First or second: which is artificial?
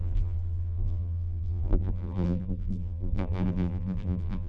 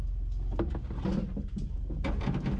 first